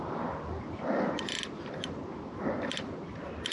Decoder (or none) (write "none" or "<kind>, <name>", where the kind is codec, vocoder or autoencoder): none